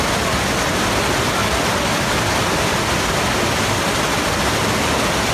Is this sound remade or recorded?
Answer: recorded